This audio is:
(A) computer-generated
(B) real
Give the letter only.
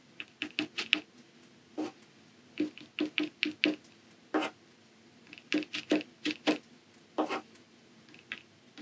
B